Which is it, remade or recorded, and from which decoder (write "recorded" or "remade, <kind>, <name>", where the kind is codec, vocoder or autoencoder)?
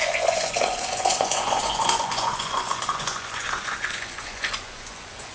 remade, vocoder, Vocos